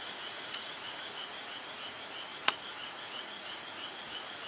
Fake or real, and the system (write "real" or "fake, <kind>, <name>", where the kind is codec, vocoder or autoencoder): fake, vocoder, Vocos